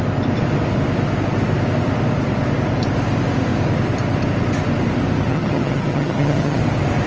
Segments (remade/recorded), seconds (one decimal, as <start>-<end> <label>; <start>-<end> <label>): 0.0-5.3 recorded; 5.3-6.6 remade; 6.6-7.1 recorded